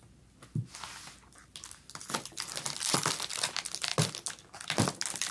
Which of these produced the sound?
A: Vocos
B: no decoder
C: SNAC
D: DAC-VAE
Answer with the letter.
B